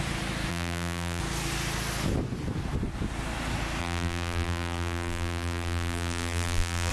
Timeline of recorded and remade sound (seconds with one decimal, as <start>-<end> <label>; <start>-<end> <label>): 0.0-0.5 recorded; 0.5-1.2 remade; 1.2-3.8 recorded; 3.8-6.9 remade